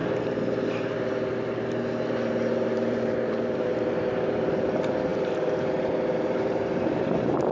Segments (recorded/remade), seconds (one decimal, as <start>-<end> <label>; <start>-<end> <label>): 0.0-7.5 remade